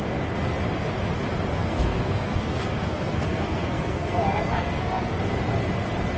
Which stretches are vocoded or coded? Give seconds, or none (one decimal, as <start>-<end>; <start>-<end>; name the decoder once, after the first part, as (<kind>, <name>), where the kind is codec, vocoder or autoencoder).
1.5-5.2 (codec, SNAC)